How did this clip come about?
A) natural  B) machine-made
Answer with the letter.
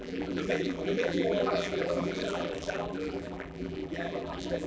B